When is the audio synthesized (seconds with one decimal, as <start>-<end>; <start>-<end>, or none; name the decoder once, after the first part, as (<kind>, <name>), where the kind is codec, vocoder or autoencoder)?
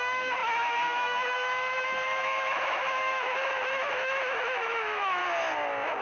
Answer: 0.0-5.2 (autoencoder, DAC-VAE)